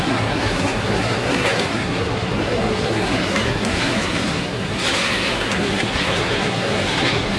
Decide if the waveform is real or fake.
fake